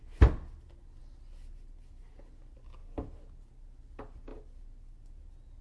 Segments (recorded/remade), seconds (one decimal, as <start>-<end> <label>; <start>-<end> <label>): 0.0-5.6 recorded